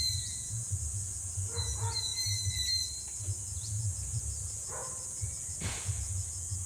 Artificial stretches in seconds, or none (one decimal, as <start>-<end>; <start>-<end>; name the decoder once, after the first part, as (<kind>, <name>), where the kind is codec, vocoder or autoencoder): 0.0-2.1 (vocoder, Vocos); 3.2-6.7